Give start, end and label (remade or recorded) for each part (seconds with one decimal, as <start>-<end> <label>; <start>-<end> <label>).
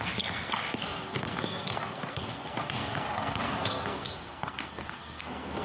0.0-5.6 remade